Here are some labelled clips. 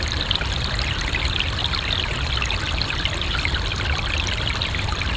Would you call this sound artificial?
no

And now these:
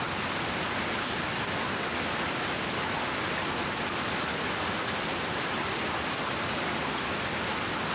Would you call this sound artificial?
no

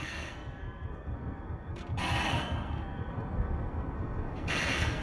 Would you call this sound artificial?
yes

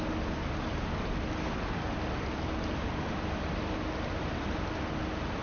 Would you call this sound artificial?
no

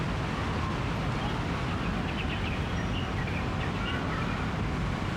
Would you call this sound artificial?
no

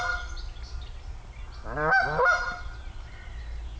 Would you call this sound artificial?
no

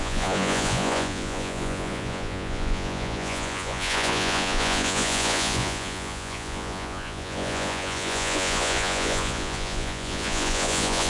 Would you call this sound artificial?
yes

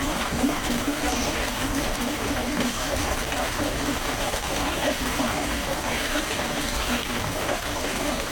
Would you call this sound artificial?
yes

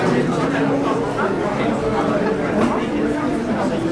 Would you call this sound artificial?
no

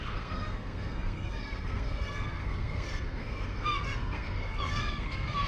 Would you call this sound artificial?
yes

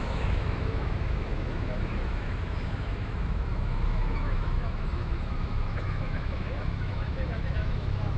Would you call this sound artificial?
yes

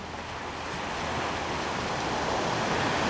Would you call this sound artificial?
no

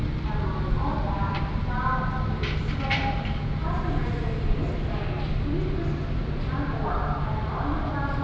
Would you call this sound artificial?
no